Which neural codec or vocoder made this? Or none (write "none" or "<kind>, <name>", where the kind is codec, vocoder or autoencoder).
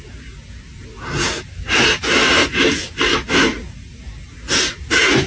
none